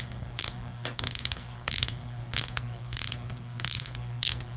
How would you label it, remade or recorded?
remade